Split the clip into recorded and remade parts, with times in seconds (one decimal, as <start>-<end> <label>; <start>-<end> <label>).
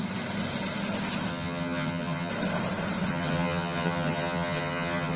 0.0-1.3 recorded; 1.3-2.3 remade; 2.3-3.1 recorded; 3.1-5.2 remade